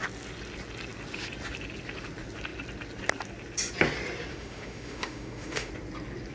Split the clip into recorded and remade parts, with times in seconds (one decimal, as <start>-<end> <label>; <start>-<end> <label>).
0.0-4.3 recorded; 4.3-5.7 remade; 5.7-6.3 recorded